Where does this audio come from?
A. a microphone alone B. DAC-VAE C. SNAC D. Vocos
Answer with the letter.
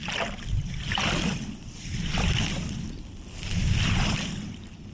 A